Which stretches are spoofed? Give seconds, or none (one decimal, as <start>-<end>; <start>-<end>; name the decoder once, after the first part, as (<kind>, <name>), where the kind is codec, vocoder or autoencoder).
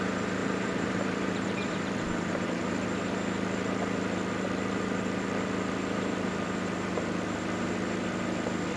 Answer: 0.4-2.6 (vocoder, BigVGAN v2)